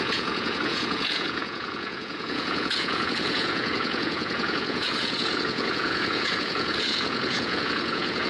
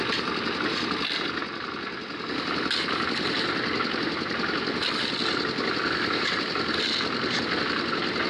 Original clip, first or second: second